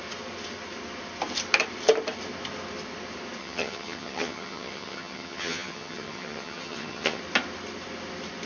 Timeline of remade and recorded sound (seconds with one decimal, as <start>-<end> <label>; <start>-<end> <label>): 0.0-3.4 recorded; 3.4-7.2 remade; 7.2-8.5 recorded